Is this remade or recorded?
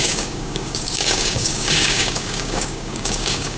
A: remade